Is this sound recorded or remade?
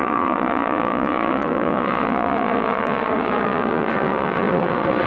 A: remade